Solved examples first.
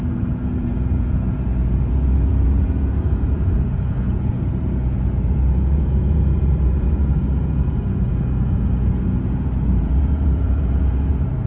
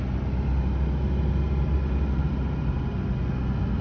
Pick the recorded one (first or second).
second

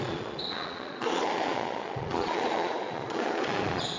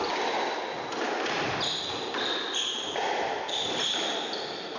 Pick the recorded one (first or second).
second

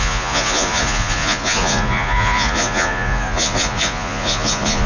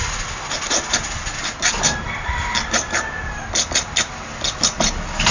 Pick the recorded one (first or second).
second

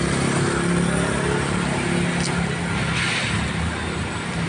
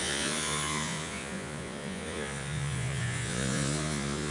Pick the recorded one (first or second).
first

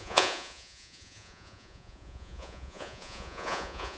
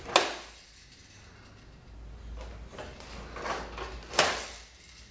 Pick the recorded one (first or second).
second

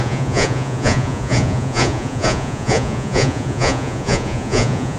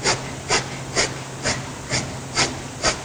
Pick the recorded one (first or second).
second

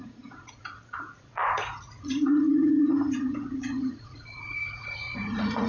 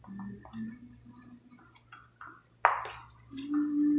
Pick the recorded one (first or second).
second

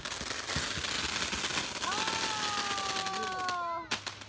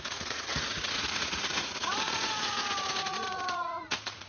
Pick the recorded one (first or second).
first